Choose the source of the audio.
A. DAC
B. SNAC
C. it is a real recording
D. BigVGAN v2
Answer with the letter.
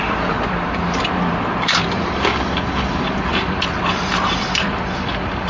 D